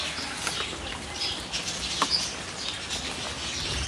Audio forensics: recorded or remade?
recorded